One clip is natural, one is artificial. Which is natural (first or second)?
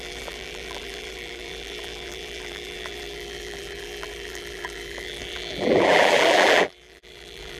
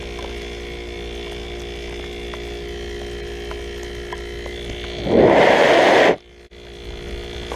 second